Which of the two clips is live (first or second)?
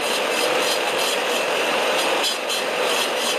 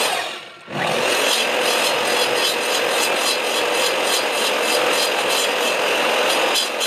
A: second